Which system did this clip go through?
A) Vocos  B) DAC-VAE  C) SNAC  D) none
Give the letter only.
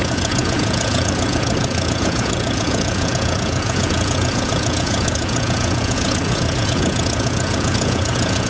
A